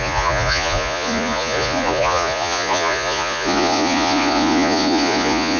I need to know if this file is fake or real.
fake